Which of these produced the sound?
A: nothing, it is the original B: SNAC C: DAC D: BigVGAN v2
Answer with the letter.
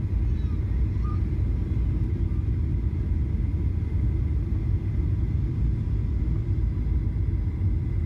A